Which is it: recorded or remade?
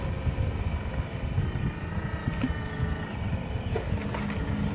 recorded